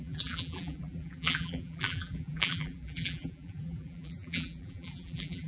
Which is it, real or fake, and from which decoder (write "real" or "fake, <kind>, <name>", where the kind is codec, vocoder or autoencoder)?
fake, vocoder, BigVGAN v2